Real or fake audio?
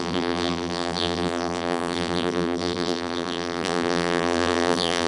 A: fake